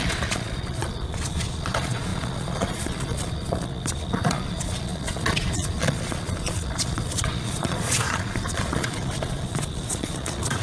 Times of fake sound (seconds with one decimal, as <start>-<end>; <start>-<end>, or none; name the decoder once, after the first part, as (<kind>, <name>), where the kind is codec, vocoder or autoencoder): 0.0-10.6 (vocoder, Vocos)